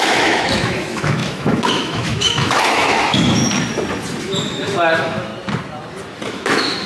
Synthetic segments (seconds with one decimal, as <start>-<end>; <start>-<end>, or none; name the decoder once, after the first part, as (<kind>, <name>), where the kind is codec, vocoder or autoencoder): 0.0-3.4 (autoencoder, DAC-VAE); 4.2-5.3; 6.3-6.9